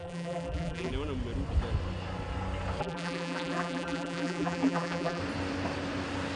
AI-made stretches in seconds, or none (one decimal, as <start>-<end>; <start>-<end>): 0.0-0.9; 2.8-5.2